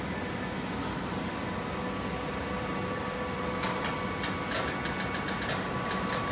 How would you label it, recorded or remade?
recorded